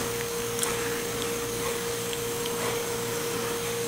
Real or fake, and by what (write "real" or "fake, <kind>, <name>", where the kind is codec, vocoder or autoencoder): fake, codec, DAC